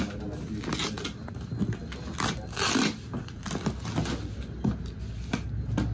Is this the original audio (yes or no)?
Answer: yes